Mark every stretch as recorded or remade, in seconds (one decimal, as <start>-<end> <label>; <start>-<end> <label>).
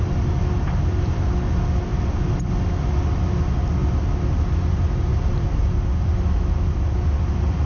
0.0-5.1 recorded; 5.1-5.6 remade; 5.6-7.7 recorded